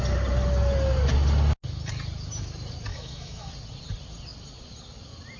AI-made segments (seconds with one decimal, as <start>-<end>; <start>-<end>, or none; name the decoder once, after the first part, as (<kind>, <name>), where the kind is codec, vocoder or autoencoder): 2.9-3.5 (autoencoder, DAC-VAE)